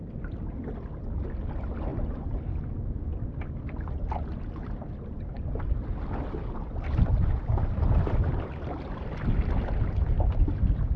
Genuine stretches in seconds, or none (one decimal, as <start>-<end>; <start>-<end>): 0.0-11.0

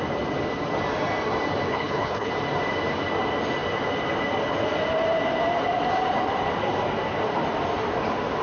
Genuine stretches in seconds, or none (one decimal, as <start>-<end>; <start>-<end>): 0.0-1.7; 2.3-8.4